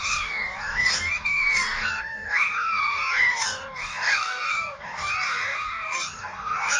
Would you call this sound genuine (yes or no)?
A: no